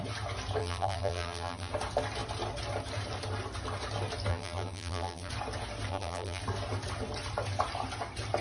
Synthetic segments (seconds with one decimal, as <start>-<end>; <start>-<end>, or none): 0.6-1.7; 4.3-5.3; 5.9-6.4